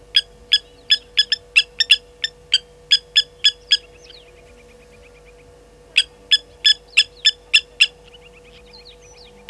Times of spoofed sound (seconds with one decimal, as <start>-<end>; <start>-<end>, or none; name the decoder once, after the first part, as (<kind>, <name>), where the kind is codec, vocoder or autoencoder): none